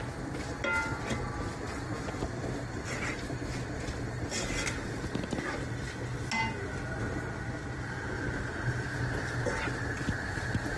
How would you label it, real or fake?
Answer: real